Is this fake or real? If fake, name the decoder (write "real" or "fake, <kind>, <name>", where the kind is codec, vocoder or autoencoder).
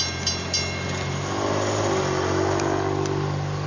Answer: real